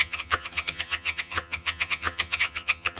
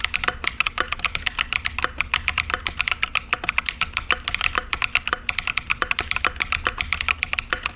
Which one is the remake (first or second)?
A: first